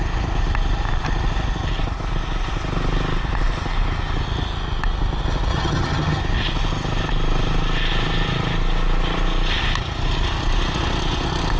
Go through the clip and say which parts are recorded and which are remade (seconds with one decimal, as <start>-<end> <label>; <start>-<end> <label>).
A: 0.0-5.5 recorded; 5.5-6.2 remade; 6.2-11.6 recorded